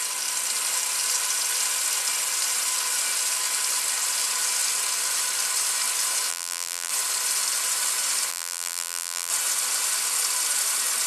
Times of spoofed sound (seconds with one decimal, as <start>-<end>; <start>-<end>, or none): 6.3-6.9; 8.3-9.3